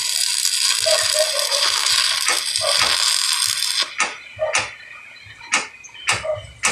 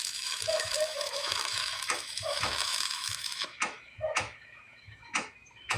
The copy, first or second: second